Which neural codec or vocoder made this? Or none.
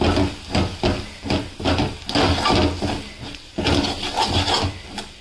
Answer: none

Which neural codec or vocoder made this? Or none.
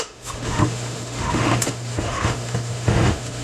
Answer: autoencoder, DAC-VAE